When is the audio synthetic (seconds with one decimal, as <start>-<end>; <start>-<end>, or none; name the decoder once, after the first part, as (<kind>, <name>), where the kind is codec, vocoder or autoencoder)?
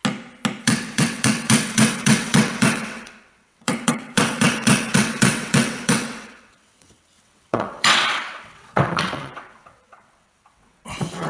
0.6-11.3 (vocoder, WaveNeXt)